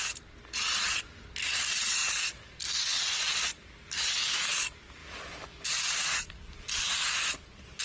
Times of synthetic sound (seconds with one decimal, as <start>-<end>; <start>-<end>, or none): none